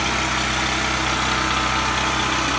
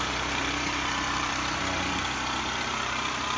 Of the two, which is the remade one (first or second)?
second